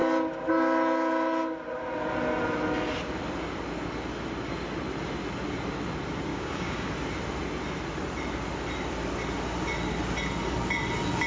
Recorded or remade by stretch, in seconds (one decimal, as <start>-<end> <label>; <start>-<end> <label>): 0.0-6.3 recorded; 6.3-6.9 remade; 6.9-11.3 recorded